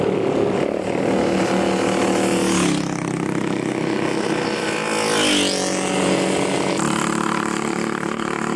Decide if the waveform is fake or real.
real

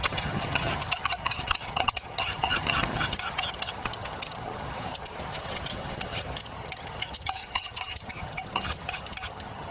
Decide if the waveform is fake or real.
fake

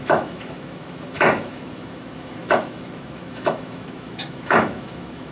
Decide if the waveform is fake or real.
fake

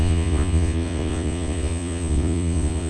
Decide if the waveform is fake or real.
fake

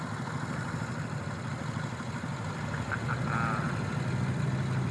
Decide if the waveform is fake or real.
real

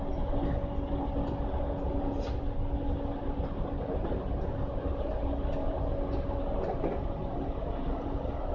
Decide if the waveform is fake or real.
real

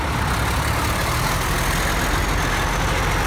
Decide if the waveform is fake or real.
real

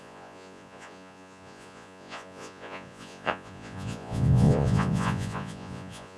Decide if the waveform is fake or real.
fake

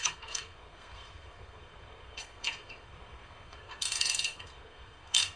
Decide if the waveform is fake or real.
fake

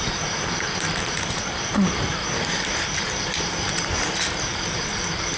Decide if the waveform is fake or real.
fake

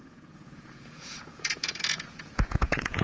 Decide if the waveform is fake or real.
fake